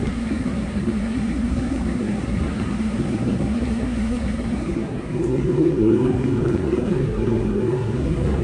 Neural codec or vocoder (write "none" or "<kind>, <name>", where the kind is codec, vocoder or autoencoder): codec, SNAC